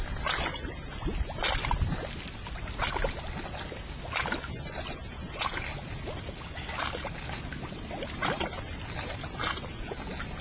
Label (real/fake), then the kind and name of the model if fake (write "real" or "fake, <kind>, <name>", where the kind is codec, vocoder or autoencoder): real